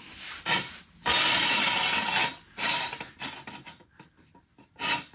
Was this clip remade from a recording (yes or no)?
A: no